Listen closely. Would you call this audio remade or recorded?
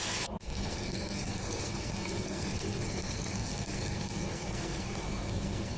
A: remade